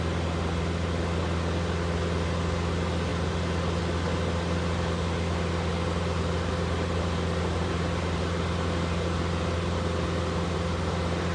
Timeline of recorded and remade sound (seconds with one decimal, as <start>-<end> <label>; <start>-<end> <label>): 0.0-11.3 recorded